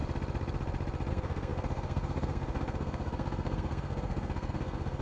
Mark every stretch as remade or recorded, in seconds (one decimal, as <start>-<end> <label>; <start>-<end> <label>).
0.0-1.1 recorded; 1.1-5.0 remade

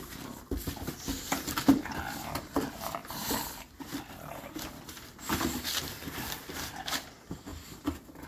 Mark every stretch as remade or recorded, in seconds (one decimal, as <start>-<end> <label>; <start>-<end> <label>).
0.0-8.3 recorded

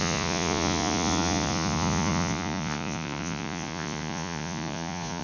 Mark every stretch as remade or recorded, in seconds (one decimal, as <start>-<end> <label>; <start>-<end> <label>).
0.0-5.2 remade

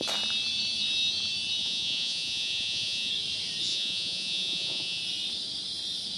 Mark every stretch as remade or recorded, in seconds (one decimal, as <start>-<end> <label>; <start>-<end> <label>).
0.0-1.6 recorded; 1.6-3.1 remade; 3.1-3.7 recorded; 3.7-5.0 remade; 5.0-6.2 recorded

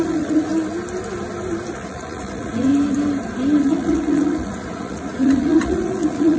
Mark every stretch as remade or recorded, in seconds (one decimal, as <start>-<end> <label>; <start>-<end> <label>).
0.0-0.5 remade; 0.5-1.7 recorded; 1.7-2.7 remade; 2.7-3.6 recorded; 3.6-6.4 remade